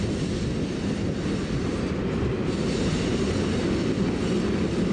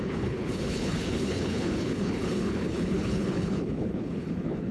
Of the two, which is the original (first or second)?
first